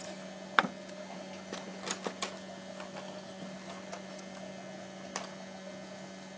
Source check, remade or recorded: recorded